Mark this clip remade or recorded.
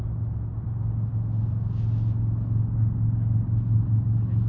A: recorded